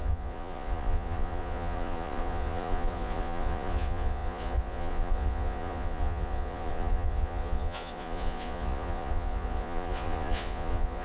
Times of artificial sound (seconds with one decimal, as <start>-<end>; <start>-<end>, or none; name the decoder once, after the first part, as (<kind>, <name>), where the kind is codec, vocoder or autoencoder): 0.0-11.0 (vocoder, Vocos)